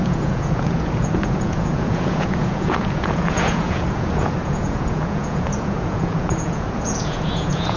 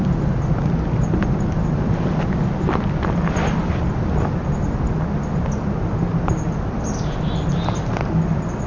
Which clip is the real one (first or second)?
second